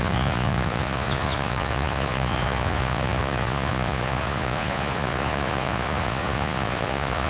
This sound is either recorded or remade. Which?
remade